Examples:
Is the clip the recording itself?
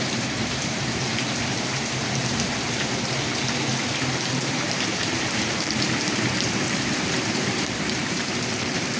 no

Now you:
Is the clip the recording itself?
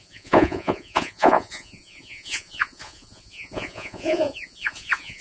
no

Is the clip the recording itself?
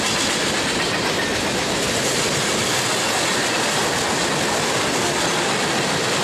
yes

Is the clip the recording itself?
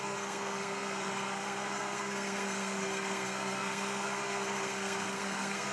no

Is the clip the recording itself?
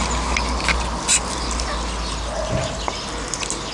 yes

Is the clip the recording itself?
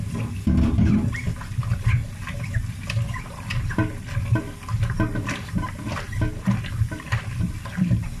yes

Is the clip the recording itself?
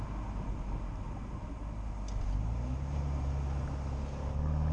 yes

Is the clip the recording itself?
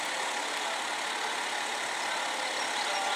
yes